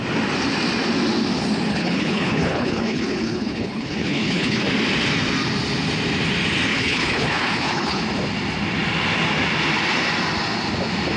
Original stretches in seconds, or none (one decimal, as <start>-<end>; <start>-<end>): 0.0-1.7; 4.6-6.7; 8.0-11.2